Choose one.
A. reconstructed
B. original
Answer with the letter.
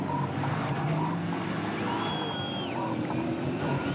B